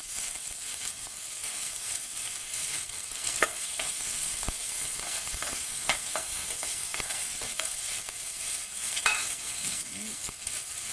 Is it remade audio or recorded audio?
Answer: remade